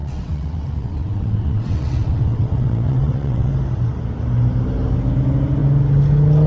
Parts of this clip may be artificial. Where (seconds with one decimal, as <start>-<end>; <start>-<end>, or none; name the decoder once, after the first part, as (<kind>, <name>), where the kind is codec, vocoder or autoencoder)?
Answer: 0.0-3.5 (vocoder, WaveNeXt)